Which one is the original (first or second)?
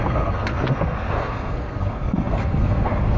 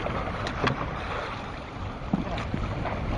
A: second